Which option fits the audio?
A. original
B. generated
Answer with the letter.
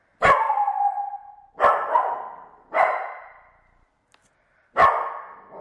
A